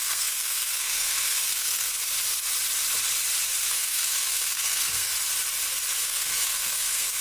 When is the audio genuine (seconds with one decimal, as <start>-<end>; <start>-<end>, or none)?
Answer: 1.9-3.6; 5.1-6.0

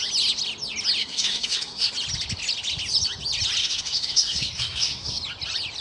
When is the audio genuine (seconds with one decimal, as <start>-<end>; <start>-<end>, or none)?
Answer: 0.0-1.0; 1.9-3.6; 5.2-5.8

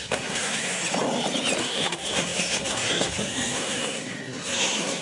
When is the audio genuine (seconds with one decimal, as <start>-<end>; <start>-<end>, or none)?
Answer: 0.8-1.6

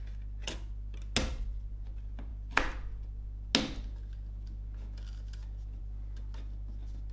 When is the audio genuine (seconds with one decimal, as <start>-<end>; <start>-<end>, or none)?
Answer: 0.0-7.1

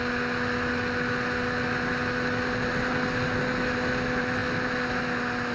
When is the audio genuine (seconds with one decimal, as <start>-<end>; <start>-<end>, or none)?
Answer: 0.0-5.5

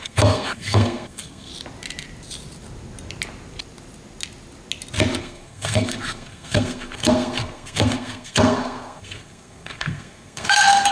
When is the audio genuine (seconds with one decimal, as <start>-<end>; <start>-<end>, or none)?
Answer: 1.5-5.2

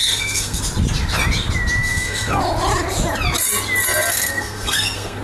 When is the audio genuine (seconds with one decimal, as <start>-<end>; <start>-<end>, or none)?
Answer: 0.6-1.8; 2.4-4.1

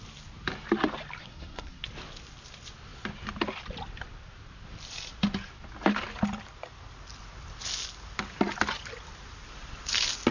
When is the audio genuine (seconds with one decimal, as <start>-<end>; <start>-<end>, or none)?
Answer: 0.0-1.2; 1.8-10.3